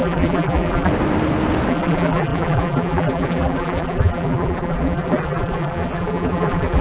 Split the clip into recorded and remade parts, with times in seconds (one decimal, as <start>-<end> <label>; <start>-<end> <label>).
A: 0.0-0.9 remade; 0.9-1.7 recorded; 1.7-6.8 remade